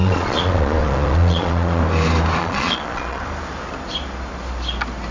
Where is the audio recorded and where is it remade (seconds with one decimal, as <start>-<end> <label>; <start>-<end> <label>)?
0.0-1.8 remade; 1.8-2.4 recorded; 2.4-3.2 remade; 3.2-5.1 recorded